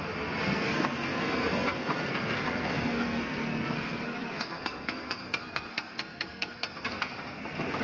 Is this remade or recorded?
remade